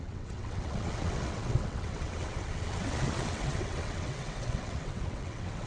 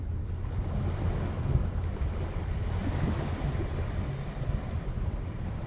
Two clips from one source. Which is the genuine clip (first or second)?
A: second